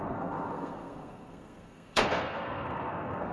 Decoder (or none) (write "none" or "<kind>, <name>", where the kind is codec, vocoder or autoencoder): codec, SNAC